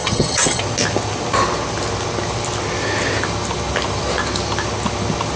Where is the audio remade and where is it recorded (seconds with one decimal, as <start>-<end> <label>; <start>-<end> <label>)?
0.0-0.6 remade; 0.6-5.4 recorded